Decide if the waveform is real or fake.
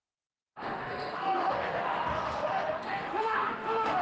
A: fake